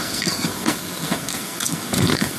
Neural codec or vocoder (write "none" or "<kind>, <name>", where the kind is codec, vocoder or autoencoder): codec, SNAC